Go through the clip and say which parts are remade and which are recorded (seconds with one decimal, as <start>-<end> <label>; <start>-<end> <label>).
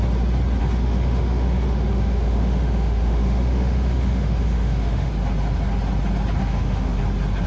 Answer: 0.0-0.6 recorded; 0.6-5.1 remade; 5.1-6.4 recorded; 6.4-7.0 remade; 7.0-7.5 recorded